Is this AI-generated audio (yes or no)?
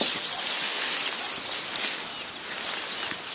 no